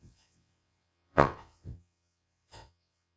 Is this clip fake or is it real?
fake